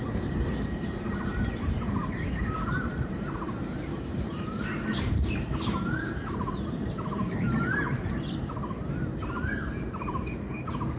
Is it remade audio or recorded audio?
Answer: remade